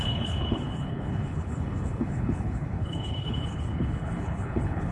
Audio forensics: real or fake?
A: fake